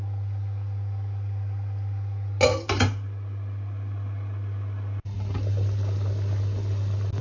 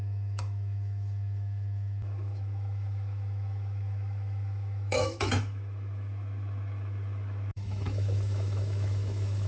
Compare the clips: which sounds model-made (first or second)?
second